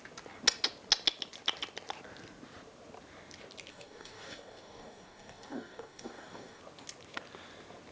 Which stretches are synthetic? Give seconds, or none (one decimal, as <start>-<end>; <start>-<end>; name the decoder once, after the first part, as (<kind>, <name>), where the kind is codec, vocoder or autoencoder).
3.7-6.6 (codec, DAC)